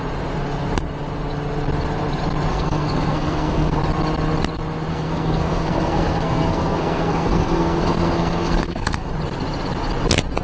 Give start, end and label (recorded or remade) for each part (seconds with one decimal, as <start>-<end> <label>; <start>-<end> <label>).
0.0-2.5 recorded; 2.5-3.8 remade; 3.8-4.9 recorded; 4.9-9.1 remade; 9.1-10.4 recorded